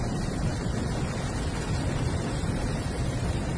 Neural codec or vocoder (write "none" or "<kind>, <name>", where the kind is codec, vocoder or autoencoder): none